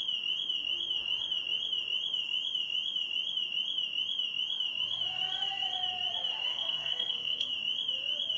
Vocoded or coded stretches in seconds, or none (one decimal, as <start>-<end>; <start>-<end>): 6.5-7.5